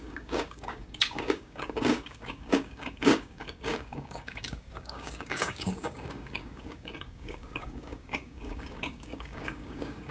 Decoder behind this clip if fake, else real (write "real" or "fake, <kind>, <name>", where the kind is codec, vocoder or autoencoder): fake, codec, DAC